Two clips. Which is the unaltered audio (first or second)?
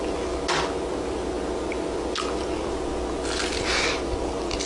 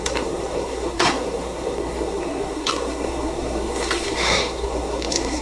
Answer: first